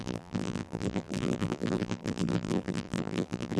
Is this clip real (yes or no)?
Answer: no